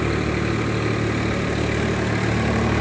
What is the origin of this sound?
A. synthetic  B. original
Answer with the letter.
B